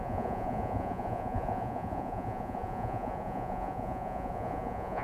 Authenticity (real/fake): fake